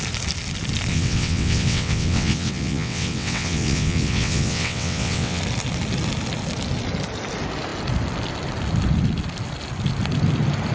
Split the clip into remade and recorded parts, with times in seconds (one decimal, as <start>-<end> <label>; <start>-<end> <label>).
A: 0.0-0.9 recorded; 0.9-5.4 remade; 5.4-10.7 recorded